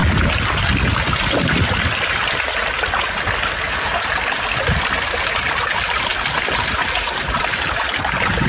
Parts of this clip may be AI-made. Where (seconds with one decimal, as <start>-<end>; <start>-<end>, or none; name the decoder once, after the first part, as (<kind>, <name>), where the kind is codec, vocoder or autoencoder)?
none